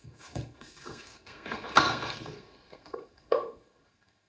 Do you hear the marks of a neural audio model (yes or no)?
yes